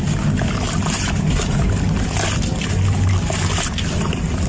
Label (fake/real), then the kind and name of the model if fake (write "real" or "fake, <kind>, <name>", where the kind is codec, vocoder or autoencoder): real